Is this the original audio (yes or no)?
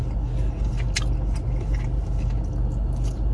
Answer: yes